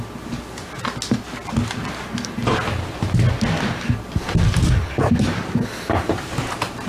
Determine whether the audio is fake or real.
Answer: real